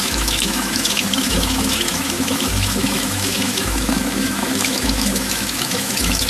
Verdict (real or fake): fake